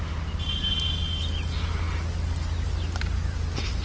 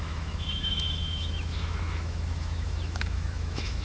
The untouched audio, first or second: first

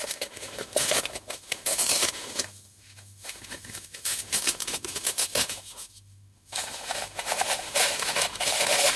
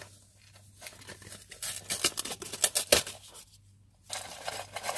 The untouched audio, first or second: second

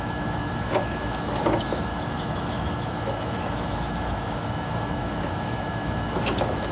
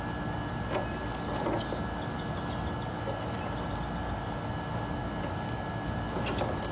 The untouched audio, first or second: second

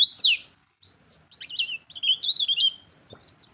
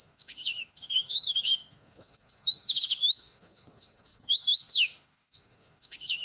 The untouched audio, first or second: first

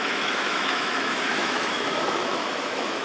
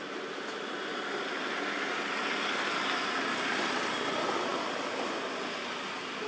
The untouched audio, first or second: second